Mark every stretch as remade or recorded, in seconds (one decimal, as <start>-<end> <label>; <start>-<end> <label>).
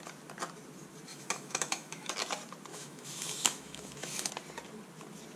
0.0-1.1 recorded; 1.1-2.1 remade; 2.1-2.7 recorded; 2.7-4.3 remade; 4.3-5.4 recorded